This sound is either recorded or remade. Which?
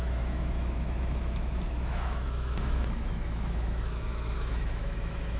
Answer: remade